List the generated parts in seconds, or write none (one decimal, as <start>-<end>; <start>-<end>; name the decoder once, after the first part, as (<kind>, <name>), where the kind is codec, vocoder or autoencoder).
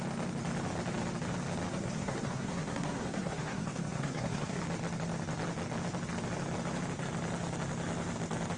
1.7-4.6 (codec, SNAC)